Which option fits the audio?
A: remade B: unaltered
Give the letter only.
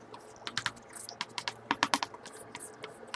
B